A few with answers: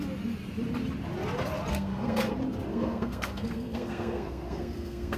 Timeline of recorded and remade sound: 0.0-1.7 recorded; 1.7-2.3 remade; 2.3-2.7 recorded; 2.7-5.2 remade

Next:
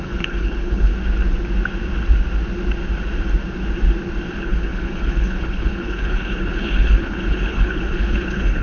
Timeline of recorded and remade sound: 0.0-0.9 remade; 0.9-4.4 recorded; 4.4-8.6 remade

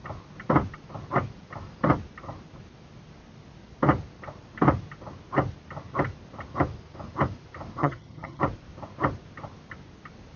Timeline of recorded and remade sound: 0.0-7.8 recorded; 7.8-8.4 remade; 8.4-10.4 recorded

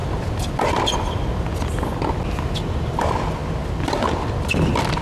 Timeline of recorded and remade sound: 0.0-5.0 recorded

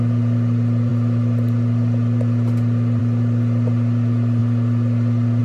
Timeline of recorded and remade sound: 0.0-5.4 recorded

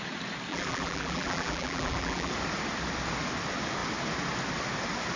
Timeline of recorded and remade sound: 0.0-0.5 recorded; 0.5-2.3 remade; 2.3-5.2 recorded

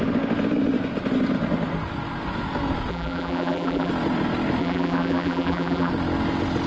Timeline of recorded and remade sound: 0.0-2.9 recorded; 2.9-3.9 remade; 3.9-4.6 recorded; 4.6-5.9 remade; 5.9-6.7 recorded